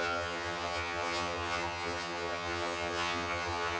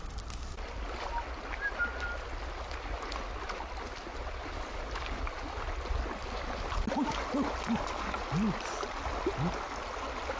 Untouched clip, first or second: second